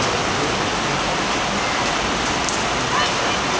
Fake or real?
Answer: real